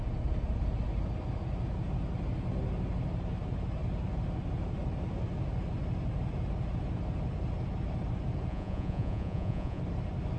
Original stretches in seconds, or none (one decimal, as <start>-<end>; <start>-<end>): 0.0-8.5; 9.8-10.4